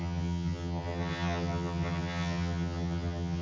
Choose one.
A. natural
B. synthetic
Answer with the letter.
B